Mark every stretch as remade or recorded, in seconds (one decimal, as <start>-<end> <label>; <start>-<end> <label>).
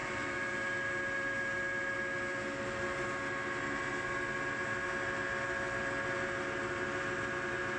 0.0-7.8 recorded